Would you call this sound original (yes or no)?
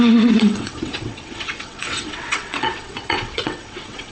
no